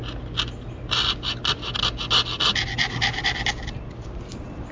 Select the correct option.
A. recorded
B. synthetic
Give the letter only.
A